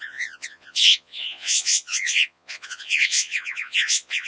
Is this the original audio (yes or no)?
no